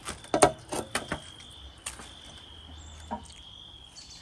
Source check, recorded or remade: recorded